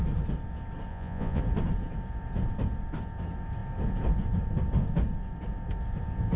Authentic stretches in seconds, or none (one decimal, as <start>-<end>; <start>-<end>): 0.0-0.9; 1.4-6.4

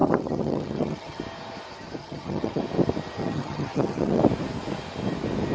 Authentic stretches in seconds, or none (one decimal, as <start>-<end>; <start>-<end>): 1.2-2.0; 2.6-3.2; 4.2-5.5

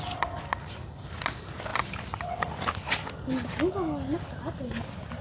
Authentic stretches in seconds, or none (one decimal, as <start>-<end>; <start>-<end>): 0.0-5.2